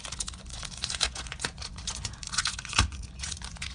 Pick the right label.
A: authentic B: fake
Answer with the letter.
B